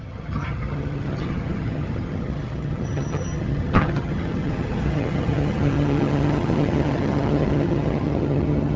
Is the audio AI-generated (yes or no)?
yes